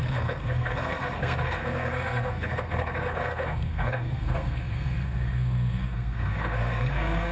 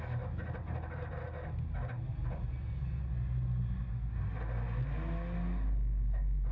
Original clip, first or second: second